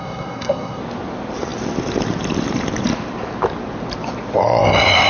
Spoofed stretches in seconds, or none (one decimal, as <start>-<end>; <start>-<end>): 0.0-0.8